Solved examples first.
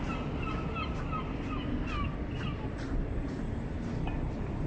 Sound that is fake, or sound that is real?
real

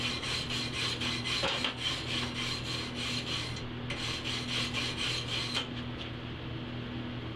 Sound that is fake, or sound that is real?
real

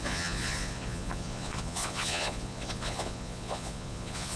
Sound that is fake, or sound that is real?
fake